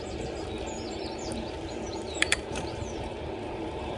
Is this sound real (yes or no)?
no